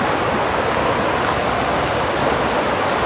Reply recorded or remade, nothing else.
recorded